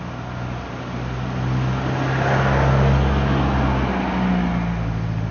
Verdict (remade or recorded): recorded